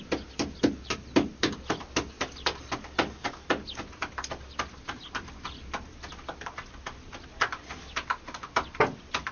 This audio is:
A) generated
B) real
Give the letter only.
B